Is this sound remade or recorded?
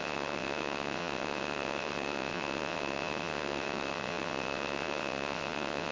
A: remade